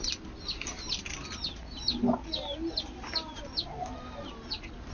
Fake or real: real